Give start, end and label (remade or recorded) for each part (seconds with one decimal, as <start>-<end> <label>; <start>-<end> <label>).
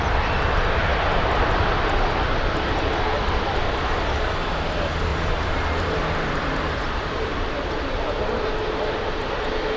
0.0-0.8 recorded; 0.8-1.4 remade; 1.4-5.1 recorded; 5.1-8.5 remade; 8.5-9.8 recorded